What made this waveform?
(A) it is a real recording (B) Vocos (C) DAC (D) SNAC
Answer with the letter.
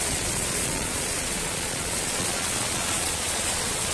B